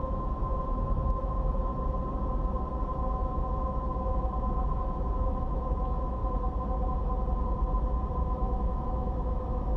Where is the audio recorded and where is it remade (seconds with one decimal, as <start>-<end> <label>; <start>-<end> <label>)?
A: 0.0-1.7 remade; 1.7-2.8 recorded; 2.8-6.2 remade; 6.2-8.2 recorded; 8.2-9.8 remade